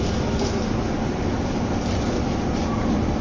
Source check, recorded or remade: recorded